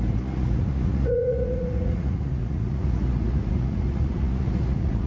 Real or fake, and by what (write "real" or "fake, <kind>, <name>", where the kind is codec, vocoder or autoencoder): fake, vocoder, Vocos